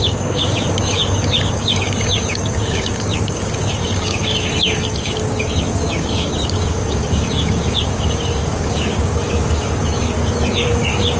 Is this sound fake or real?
fake